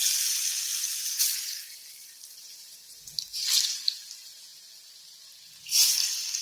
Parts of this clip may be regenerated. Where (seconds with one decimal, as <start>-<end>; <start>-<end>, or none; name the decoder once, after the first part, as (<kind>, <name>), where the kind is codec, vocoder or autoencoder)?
0.0-0.7 (vocoder, BigVGAN v2); 1.2-4.5